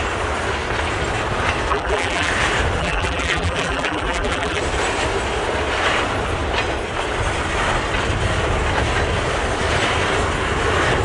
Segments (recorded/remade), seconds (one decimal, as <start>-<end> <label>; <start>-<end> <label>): 0.0-1.7 recorded; 1.7-2.3 remade; 2.3-2.8 recorded; 2.8-4.6 remade; 4.6-11.0 recorded